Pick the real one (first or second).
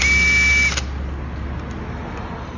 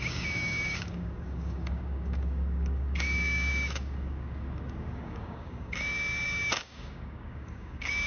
first